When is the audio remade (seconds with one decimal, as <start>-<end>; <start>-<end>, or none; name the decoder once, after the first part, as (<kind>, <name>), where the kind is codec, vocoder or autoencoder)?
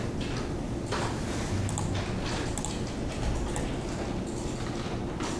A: none